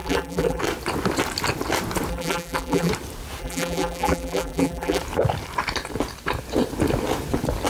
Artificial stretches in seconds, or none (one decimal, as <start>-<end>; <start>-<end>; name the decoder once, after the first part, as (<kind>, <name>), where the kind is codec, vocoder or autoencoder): 0.0-0.6 (vocoder, BigVGAN v2); 2.1-2.9; 3.4-5.0